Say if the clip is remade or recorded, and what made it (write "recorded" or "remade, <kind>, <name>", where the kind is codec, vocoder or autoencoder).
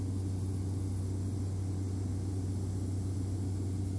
recorded